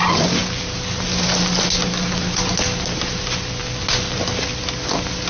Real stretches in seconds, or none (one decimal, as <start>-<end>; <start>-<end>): 0.0-5.3